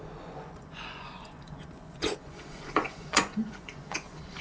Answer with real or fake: fake